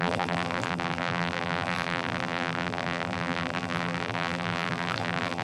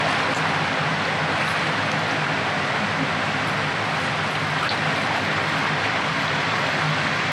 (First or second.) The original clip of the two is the second